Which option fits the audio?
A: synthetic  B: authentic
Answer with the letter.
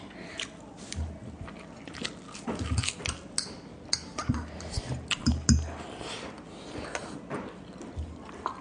B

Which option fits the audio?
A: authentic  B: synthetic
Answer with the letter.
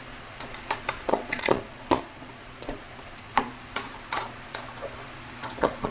B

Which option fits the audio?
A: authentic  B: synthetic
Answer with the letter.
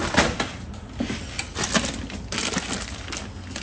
A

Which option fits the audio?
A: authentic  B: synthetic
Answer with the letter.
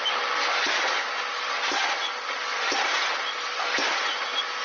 A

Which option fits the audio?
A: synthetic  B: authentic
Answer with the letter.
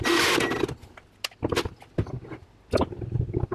B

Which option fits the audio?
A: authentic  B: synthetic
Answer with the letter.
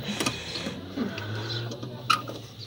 A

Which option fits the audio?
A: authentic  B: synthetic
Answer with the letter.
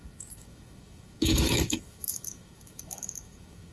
B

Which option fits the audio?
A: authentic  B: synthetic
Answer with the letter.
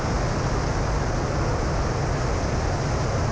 A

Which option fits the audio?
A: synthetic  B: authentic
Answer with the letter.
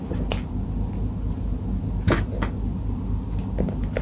B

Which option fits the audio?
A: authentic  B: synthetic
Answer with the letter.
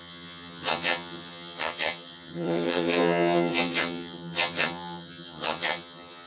B